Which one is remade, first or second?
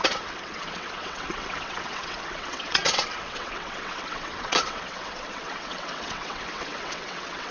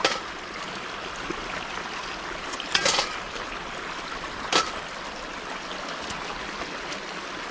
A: first